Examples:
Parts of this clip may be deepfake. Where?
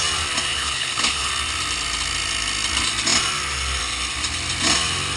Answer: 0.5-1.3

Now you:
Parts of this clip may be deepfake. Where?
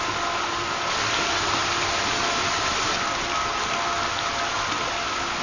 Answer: none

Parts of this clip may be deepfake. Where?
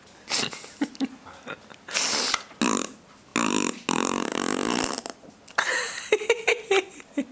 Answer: none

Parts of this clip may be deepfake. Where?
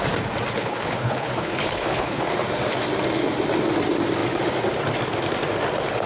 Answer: 0.6-2.2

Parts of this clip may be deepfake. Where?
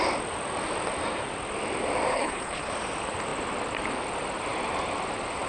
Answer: 2.1-2.7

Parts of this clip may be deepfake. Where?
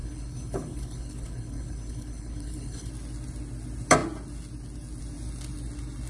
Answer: 0.0-2.9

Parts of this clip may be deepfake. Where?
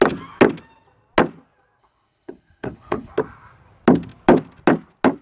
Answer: 1.8-3.1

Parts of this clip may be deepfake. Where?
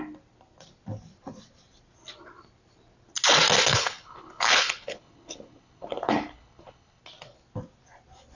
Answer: 3.7-7.0